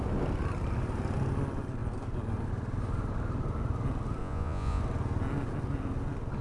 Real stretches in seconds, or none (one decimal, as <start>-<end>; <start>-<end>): 0.0-4.2; 4.8-6.4